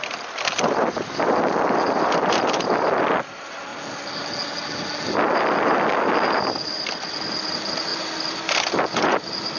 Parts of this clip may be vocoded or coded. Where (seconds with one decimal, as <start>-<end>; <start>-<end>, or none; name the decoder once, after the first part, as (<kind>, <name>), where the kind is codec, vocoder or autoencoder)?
0.0-3.7 (vocoder, BigVGAN v2); 5.5-9.6